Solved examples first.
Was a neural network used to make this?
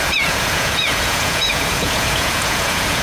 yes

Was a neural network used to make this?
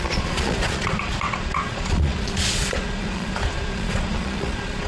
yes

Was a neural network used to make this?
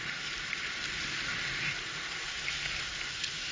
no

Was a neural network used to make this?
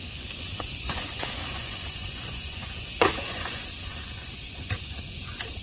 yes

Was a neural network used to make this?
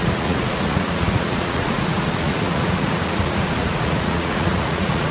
yes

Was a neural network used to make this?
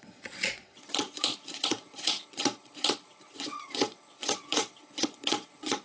yes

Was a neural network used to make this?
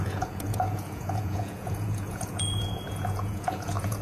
yes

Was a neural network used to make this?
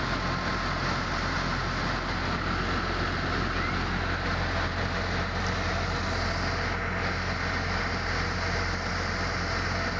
no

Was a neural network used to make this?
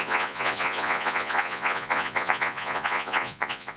yes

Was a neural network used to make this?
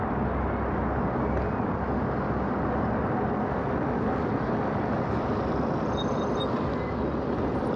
no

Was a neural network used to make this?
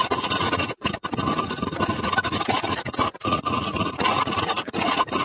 yes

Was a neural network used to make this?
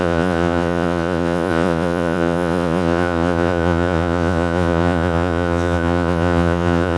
yes